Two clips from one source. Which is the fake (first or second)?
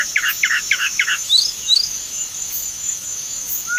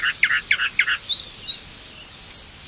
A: first